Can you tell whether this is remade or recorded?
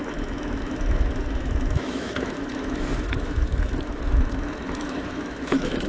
remade